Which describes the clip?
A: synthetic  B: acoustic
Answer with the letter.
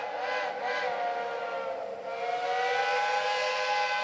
B